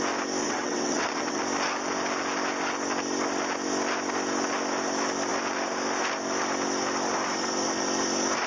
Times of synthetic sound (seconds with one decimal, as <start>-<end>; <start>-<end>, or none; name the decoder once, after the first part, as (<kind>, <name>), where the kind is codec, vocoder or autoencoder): 0.4-1.4 (vocoder, WaveNeXt)